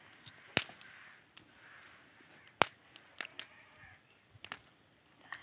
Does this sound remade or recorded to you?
recorded